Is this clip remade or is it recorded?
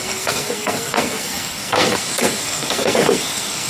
remade